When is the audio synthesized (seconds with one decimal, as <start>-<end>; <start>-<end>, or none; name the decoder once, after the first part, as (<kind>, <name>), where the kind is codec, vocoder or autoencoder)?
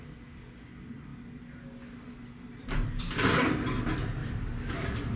4.2-5.2 (vocoder, BigVGAN v2)